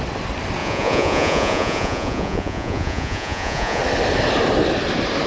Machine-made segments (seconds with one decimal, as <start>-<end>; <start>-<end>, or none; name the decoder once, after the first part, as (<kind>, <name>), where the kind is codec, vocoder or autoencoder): 0.6-3.8 (vocoder, Vocos)